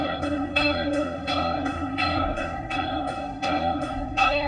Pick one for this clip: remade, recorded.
remade